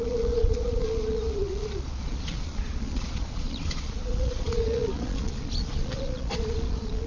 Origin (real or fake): fake